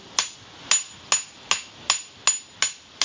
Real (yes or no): yes